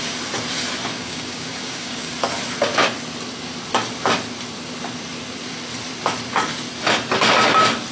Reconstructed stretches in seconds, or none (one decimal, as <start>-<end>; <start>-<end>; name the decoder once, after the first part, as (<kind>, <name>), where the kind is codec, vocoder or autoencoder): 0.9-2.1 (codec, DAC)